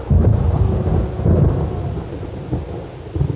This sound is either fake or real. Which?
real